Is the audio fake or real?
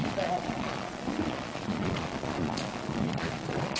fake